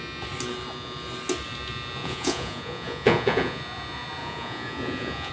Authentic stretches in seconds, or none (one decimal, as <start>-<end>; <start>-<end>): 0.0-2.0; 3.6-4.2